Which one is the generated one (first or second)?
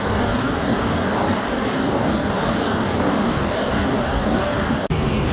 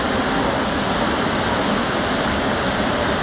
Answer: first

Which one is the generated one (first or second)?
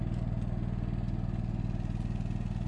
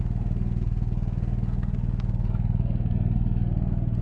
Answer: second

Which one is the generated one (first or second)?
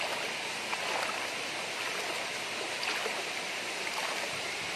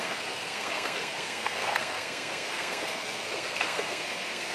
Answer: second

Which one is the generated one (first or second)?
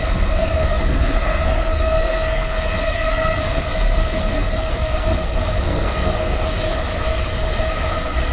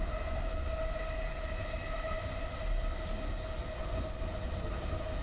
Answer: first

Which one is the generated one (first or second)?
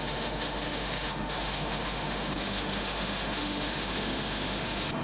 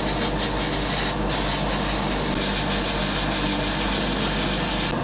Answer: first